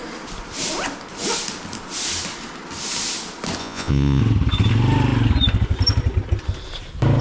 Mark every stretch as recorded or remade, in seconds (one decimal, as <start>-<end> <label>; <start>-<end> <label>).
0.0-3.6 recorded; 3.6-4.2 remade; 4.2-7.2 recorded